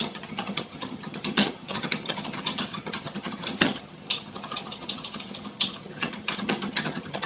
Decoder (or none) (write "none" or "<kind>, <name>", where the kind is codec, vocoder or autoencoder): vocoder, HiFi-GAN